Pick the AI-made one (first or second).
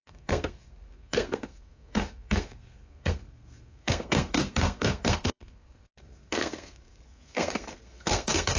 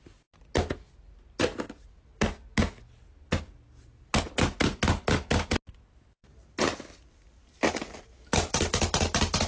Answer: first